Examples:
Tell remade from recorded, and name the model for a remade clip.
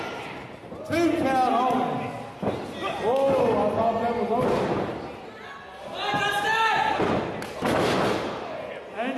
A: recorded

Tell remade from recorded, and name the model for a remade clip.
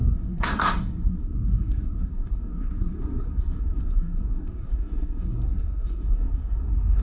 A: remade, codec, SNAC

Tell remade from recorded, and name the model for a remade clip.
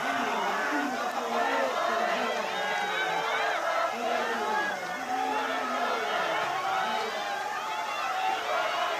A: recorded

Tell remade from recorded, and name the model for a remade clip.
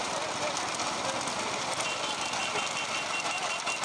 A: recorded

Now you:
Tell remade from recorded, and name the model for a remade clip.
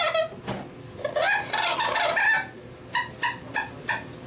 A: recorded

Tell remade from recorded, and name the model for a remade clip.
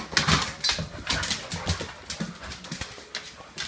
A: recorded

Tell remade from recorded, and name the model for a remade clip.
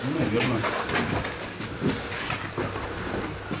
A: recorded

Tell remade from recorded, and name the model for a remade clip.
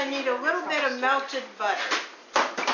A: recorded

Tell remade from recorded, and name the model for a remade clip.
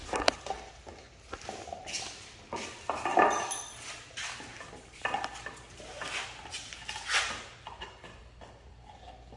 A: recorded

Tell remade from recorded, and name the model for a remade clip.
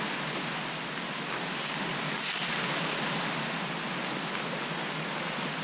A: recorded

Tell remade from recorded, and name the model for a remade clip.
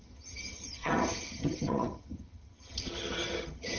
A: remade, vocoder, HiFi-GAN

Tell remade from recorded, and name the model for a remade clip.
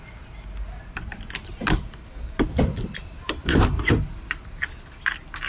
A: recorded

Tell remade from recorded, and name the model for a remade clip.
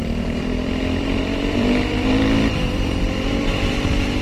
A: remade, vocoder, BigVGAN v2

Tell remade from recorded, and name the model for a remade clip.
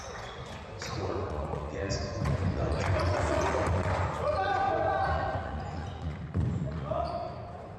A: remade, vocoder, Vocos